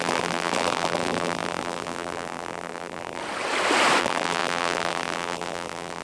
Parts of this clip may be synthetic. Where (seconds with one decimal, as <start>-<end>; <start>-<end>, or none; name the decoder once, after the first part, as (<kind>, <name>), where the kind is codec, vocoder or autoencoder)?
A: 0.0-3.2 (vocoder, BigVGAN v2); 4.0-6.0